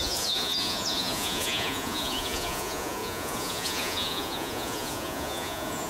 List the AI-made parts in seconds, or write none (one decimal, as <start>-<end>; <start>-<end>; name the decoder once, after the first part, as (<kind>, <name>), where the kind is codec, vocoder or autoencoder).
0.0-5.9 (vocoder, Vocos)